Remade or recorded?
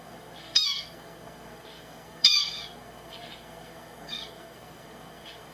remade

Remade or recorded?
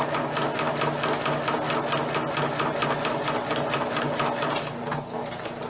recorded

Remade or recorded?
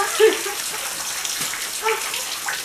recorded